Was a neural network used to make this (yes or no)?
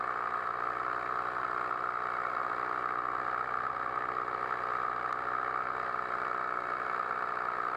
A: no